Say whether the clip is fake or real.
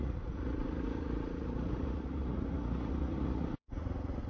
fake